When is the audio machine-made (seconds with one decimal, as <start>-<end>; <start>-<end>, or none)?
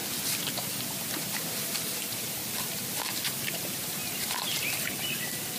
1.2-2.4; 3.5-5.6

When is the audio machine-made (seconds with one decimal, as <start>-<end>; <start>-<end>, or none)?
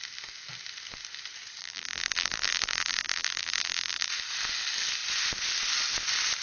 1.6-4.1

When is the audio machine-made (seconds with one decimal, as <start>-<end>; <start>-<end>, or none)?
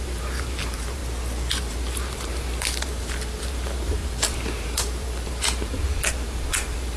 0.0-1.0; 1.6-7.0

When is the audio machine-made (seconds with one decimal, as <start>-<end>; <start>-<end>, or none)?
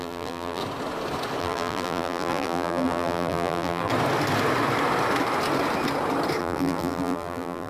0.0-0.6; 1.4-3.9; 6.4-7.7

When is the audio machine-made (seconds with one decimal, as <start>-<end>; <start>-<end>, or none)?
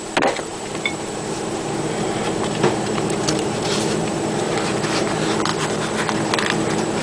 0.5-4.7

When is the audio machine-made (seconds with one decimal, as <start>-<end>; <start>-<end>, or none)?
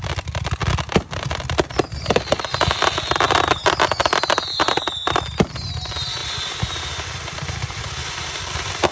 6.2-8.4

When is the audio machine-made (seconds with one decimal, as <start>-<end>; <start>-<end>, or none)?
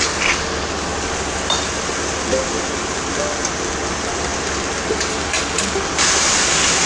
none